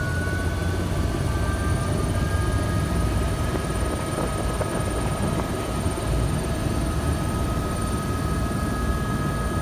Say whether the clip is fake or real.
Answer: real